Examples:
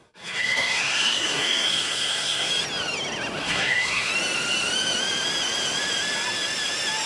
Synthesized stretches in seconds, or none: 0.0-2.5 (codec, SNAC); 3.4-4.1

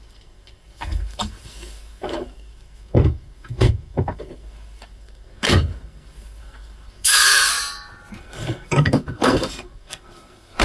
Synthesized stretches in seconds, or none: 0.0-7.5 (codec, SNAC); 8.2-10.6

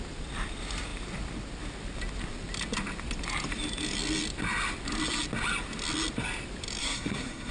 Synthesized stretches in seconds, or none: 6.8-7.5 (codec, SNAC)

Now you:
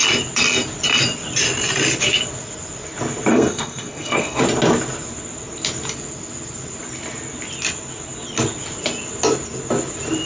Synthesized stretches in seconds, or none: 3.3-4.4 (codec, SNAC)

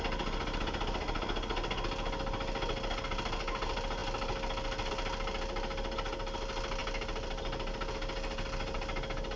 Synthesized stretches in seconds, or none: none

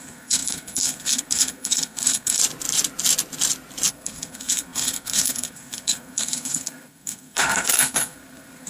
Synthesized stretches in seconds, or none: 0.0-2.4 (codec, SNAC); 3.9-8.7